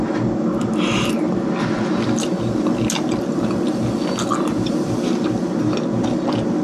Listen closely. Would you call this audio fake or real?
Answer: real